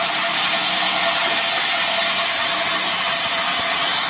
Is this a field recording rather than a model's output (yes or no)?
yes